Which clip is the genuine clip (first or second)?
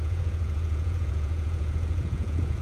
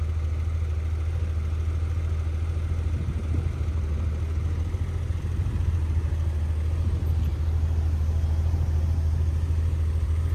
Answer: second